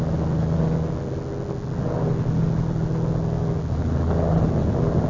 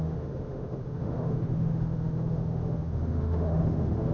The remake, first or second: second